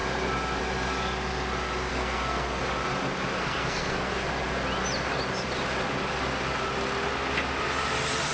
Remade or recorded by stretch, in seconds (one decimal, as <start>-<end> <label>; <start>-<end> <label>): 0.0-1.9 recorded; 1.9-2.6 remade; 2.6-3.4 recorded; 3.4-4.1 remade; 4.1-8.3 recorded